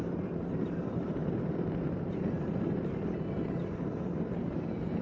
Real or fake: fake